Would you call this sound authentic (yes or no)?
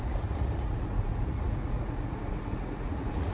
no